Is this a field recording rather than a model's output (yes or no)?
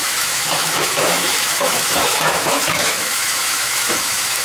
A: no